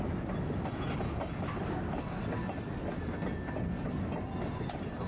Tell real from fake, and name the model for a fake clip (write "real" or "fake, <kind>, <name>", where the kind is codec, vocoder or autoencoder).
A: real